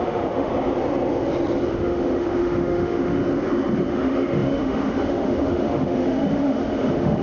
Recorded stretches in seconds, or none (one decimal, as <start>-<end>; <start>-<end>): 0.5-1.7; 3.2-3.9